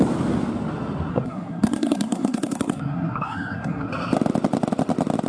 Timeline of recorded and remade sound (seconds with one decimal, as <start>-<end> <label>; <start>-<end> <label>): 0.0-1.1 recorded; 1.1-3.9 remade; 3.9-5.3 recorded